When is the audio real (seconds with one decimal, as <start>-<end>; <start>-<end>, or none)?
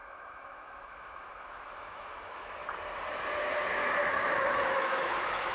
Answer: 2.6-4.1